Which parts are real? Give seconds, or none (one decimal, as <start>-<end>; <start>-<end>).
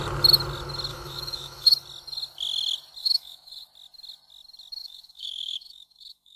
0.0-0.9; 1.7-3.0; 3.7-4.8